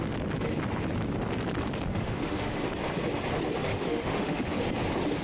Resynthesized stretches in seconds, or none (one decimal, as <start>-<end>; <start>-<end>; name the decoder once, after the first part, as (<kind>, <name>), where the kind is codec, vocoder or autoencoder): 1.9-2.6 (autoencoder, DAC-VAE); 3.7-4.6